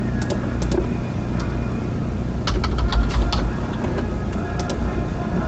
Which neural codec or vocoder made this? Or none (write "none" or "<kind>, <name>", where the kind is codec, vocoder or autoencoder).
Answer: none